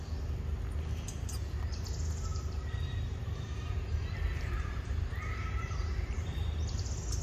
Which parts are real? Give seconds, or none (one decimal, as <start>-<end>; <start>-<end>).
0.0-2.3; 6.6-7.2